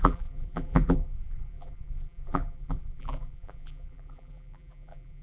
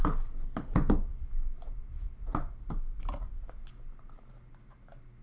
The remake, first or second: first